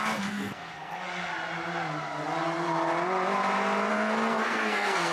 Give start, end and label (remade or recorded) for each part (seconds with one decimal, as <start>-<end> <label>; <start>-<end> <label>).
0.0-1.3 remade; 1.3-3.9 recorded; 3.9-5.1 remade